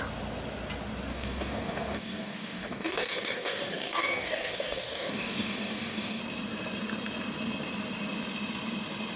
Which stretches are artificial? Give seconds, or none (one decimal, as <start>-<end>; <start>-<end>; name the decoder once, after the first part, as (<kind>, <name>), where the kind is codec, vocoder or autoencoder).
1.1-6.2 (codec, DAC)